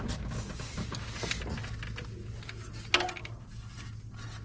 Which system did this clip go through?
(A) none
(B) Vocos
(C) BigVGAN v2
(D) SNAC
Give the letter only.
A